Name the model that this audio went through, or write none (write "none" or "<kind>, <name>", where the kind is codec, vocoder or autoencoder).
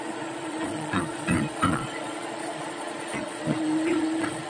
vocoder, Vocos